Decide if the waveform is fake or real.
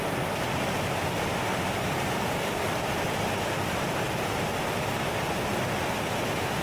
real